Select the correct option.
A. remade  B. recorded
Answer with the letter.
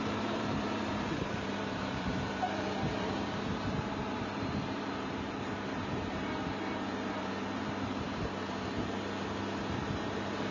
A